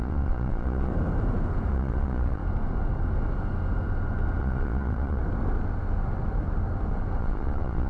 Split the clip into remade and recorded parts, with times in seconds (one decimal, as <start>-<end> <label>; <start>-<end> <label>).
0.0-0.9 remade; 0.9-1.7 recorded; 1.7-2.4 remade; 2.4-4.4 recorded; 4.4-5.2 remade; 5.2-7.2 recorded; 7.2-7.9 remade